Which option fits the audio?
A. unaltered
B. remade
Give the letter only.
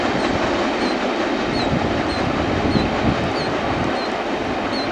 A